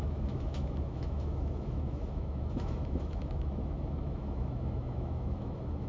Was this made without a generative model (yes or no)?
no